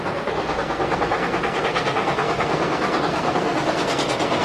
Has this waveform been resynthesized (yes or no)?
yes